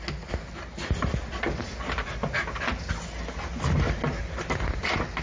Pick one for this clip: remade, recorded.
recorded